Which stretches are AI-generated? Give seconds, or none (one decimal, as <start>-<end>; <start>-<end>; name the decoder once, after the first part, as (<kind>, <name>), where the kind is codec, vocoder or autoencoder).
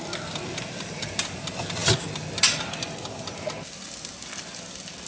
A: none